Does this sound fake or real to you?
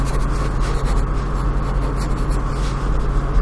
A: real